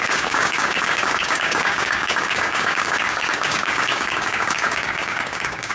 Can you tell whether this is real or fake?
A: fake